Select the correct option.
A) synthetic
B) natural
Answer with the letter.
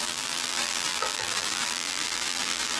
A